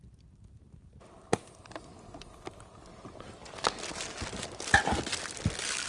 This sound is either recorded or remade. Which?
recorded